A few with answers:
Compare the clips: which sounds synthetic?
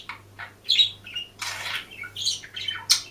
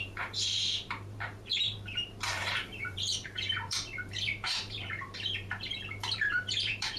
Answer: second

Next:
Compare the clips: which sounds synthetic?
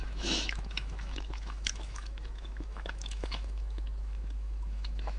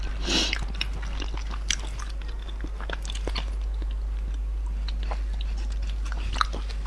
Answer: first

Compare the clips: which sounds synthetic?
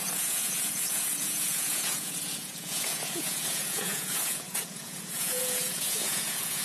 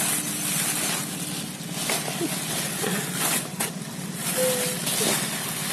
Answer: first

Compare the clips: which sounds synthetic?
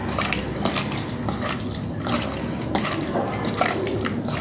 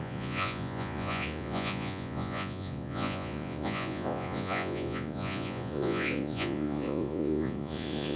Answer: second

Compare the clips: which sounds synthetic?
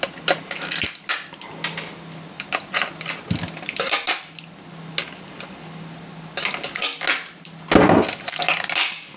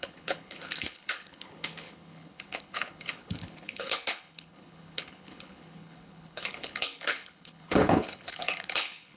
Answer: second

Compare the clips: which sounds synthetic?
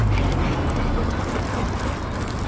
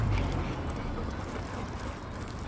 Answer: second